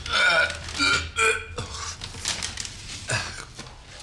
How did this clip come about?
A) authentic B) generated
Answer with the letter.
A